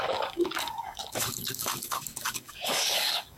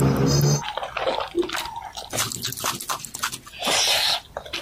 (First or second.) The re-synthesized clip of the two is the first